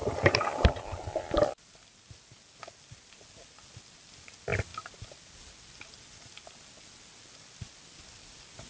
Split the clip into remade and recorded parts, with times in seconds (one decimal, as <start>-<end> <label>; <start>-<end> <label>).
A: 0.0-8.7 recorded